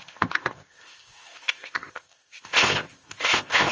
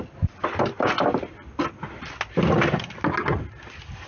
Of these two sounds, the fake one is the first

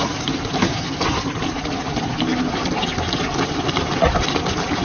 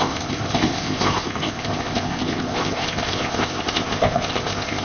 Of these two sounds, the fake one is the second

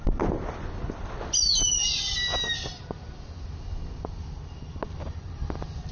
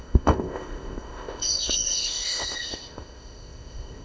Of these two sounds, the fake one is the second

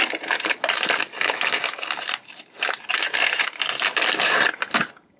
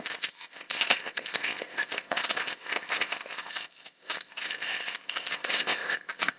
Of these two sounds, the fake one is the second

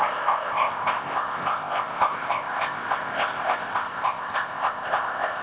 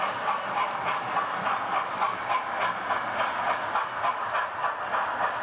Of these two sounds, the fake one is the first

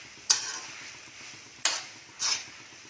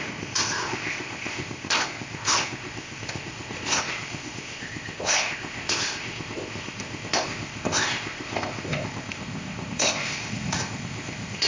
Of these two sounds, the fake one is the second